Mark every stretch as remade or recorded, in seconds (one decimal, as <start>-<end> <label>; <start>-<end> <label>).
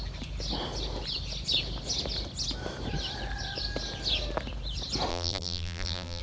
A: 0.0-5.1 recorded; 5.1-6.2 remade